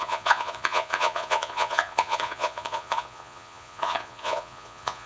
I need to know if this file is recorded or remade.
remade